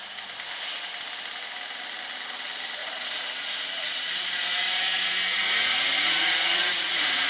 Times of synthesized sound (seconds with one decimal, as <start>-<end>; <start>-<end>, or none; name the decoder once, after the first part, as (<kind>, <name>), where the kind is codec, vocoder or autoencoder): 2.8-7.3 (vocoder, Vocos)